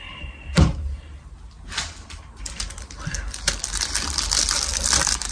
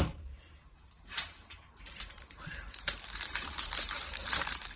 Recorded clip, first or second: first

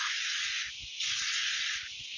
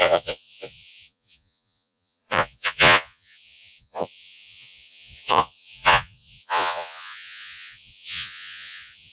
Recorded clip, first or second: first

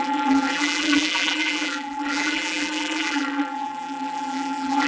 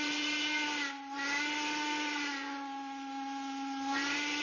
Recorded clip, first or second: second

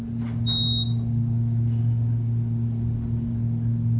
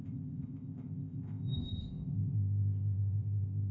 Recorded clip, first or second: first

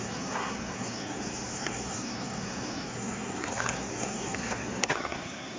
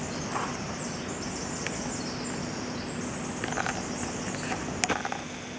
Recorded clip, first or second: second